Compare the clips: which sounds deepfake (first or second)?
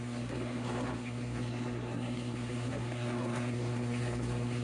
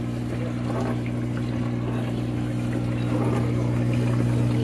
first